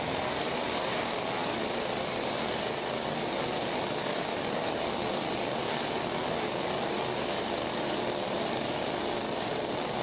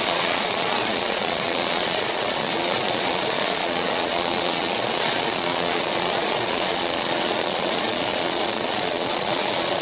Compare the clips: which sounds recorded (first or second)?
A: first